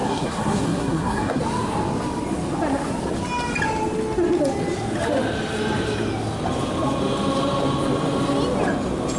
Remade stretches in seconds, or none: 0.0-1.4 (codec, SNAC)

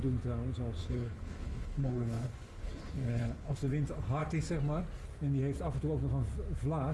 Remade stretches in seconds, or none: 0.8-3.6 (codec, HILCodec)

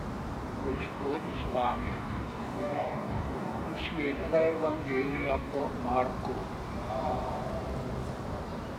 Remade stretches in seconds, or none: 0.6-5.6 (codec, DAC)

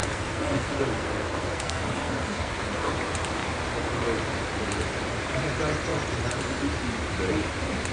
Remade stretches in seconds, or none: 0.0-2.9 (codec, SNAC)

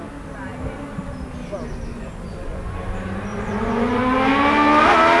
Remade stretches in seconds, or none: 1.9-2.7 (vocoder, Vocos); 3.3-4.0

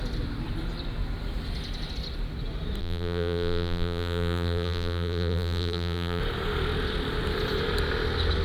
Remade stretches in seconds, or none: 2.8-6.2 (vocoder, BigVGAN v2)

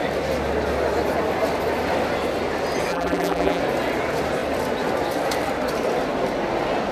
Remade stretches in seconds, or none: 2.9-3.6 (vocoder, BigVGAN v2)